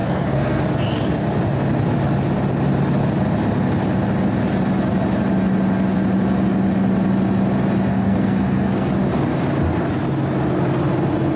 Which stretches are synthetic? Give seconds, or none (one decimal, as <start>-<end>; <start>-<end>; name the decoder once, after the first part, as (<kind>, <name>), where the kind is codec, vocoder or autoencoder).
0.0-0.6 (codec, SNAC); 7.9-8.9